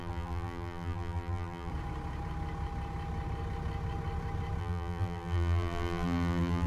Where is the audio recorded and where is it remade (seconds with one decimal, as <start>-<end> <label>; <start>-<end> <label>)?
0.0-1.7 remade; 1.7-4.6 recorded; 4.6-6.7 remade